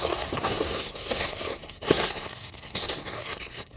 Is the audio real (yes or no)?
no